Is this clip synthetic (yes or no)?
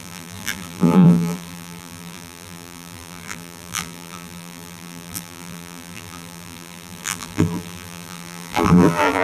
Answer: yes